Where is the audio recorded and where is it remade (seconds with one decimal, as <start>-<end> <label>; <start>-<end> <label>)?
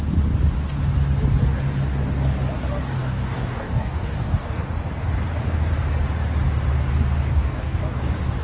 0.0-3.0 recorded; 3.0-4.6 remade; 4.6-7.3 recorded; 7.3-8.0 remade; 8.0-8.4 recorded